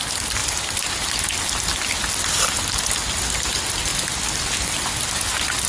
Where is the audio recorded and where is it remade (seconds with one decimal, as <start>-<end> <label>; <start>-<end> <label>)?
0.0-5.7 recorded